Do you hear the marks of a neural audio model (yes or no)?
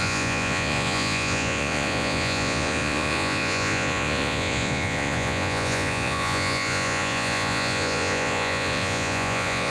yes